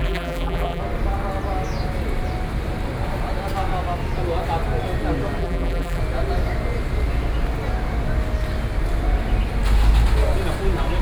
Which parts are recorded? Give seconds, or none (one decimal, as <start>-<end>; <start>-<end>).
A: 0.8-5.4; 6.0-11.0